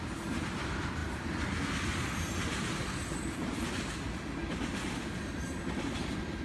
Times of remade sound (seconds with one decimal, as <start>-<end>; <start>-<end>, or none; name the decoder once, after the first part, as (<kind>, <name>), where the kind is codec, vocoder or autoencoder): none

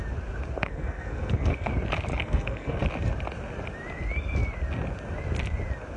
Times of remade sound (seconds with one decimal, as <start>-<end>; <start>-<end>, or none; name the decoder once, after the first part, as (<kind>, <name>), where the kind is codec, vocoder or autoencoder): 0.6-1.7 (codec, SNAC); 2.1-2.8